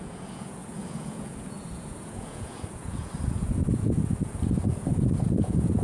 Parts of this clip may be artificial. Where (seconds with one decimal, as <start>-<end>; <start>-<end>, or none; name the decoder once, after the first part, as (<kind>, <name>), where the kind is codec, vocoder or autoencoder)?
0.0-5.8 (vocoder, Vocos)